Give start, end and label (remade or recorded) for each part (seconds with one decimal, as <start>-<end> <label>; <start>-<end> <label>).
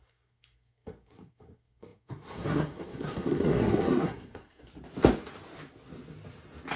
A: 0.0-4.7 remade; 4.7-6.8 recorded